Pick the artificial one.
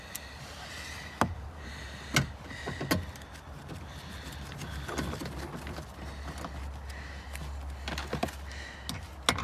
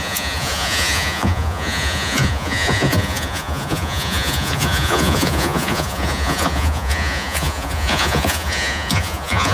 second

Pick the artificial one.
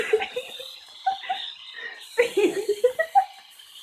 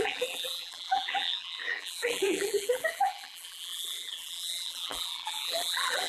second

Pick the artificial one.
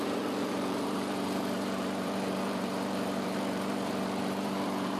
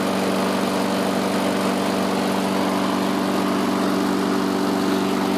first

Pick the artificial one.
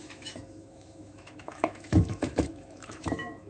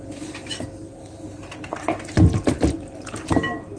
first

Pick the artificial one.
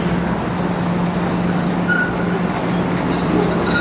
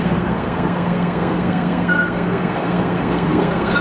second